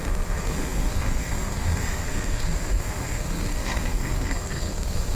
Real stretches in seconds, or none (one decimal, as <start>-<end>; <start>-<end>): none